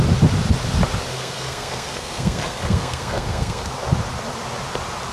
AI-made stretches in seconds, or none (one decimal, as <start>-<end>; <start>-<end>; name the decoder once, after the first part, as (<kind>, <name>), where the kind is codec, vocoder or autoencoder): 1.1-3.6 (codec, SNAC)